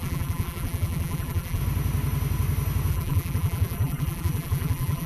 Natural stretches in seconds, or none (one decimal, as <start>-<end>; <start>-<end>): 1.6-2.9